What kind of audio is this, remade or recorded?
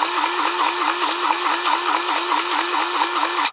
recorded